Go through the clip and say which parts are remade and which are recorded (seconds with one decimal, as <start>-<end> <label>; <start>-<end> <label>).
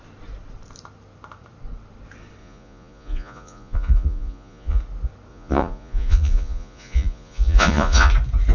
0.0-2.4 recorded; 2.4-4.8 remade; 4.8-5.3 recorded; 5.3-8.1 remade; 8.1-8.5 recorded